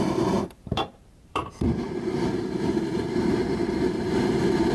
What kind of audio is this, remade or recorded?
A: remade